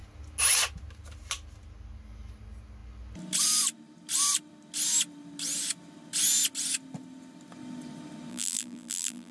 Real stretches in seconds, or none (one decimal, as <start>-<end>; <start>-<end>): 0.0-8.3